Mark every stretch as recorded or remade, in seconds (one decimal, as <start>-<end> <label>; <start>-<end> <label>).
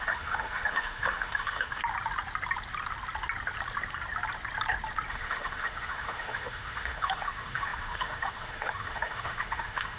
0.0-1.8 remade; 1.8-5.1 recorded; 5.1-10.0 remade